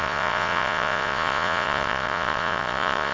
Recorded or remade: remade